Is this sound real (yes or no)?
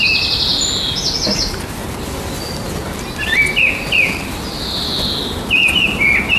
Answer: yes